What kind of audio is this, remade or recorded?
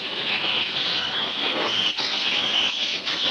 remade